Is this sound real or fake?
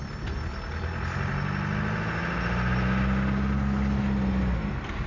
real